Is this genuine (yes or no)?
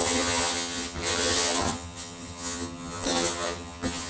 no